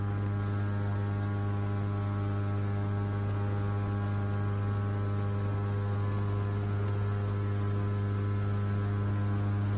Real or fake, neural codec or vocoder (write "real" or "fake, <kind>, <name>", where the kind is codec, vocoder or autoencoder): real